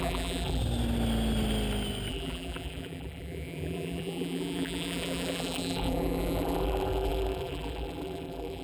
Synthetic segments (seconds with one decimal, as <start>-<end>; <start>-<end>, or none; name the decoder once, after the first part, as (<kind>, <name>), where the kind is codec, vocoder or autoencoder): 0.0-0.6 (vocoder, BigVGAN v2); 2.1-8.6